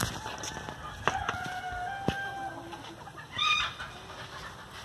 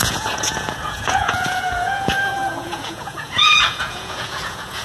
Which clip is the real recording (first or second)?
first